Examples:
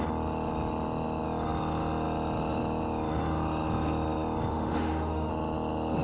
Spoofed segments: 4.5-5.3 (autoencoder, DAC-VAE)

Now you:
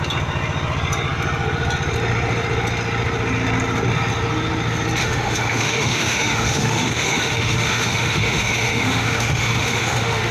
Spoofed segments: 5.0-10.3 (autoencoder, DAC-VAE)

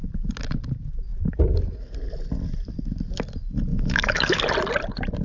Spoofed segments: 3.7-4.4 (autoencoder, DAC-VAE)

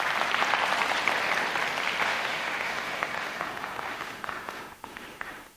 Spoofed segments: 2.0-5.6 (autoencoder, DAC-VAE)

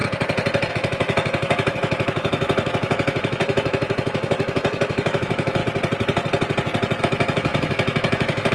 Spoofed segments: 0.7-5.6 (autoencoder, DAC-VAE); 7.0-8.5

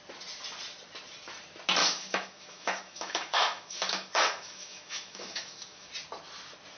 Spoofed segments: 1.8-5.9 (autoencoder, DAC-VAE)

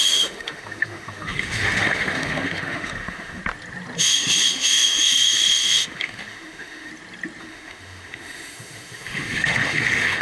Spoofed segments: 0.0-3.4 (autoencoder, DAC-VAE); 4.0-6.9; 7.4-10.2